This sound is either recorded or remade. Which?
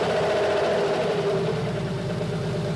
recorded